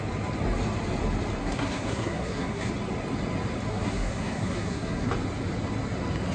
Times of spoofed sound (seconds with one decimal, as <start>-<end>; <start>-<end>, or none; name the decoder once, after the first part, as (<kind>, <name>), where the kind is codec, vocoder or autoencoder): 1.4-2.7 (codec, SNAC); 3.7-5.1